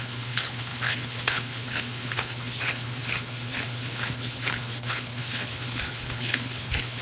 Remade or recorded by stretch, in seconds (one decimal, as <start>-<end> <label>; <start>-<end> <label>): 0.0-7.0 remade